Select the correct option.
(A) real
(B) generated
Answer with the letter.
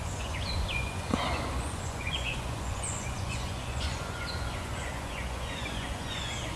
B